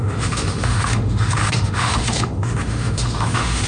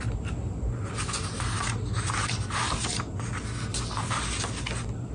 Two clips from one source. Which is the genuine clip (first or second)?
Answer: second